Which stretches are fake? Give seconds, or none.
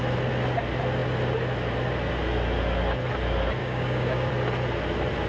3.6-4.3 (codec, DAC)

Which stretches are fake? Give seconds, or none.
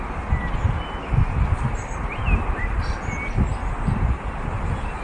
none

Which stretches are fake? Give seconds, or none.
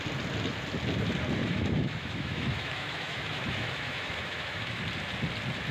1.4-4.8 (autoencoder, DAC-VAE)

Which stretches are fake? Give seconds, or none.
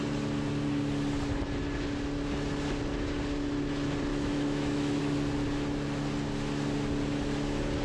4.1-5.0 (autoencoder, DAC-VAE)